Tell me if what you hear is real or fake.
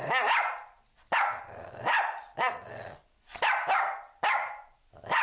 real